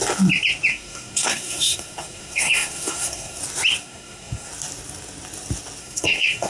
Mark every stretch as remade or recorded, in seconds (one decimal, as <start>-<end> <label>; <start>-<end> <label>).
0.0-0.7 recorded; 0.7-3.4 remade; 3.4-3.8 recorded; 3.8-4.5 remade; 4.5-5.8 recorded; 5.8-6.5 remade